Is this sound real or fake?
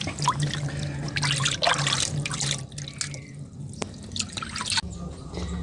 real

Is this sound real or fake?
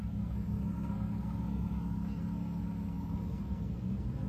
fake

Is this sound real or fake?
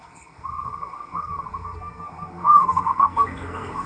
fake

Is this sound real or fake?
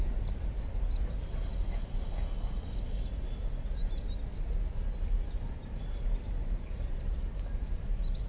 real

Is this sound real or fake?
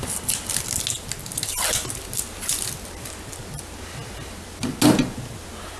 real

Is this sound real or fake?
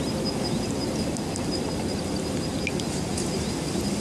real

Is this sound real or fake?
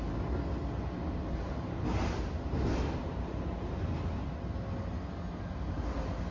real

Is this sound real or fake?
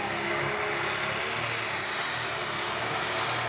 real